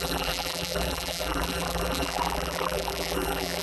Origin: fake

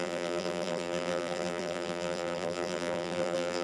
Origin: fake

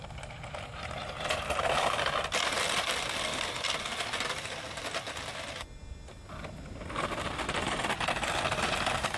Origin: real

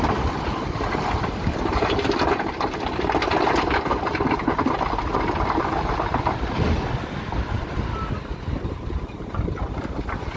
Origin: real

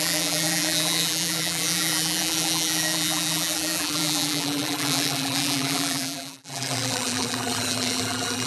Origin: fake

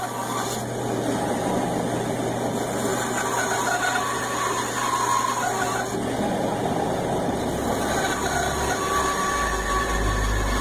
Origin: real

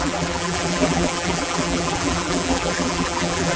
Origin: fake